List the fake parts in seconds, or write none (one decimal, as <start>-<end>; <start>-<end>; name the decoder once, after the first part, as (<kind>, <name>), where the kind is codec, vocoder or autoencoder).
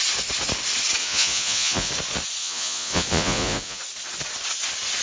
1.0-1.9 (vocoder, Vocos); 2.4-3.8